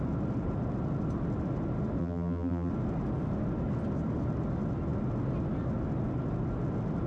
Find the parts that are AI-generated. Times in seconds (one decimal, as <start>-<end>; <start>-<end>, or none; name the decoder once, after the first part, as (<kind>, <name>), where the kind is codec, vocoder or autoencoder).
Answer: 2.0-2.7 (vocoder, BigVGAN v2)